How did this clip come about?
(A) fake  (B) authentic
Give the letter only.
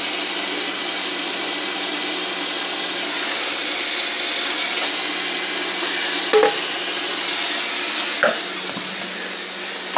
B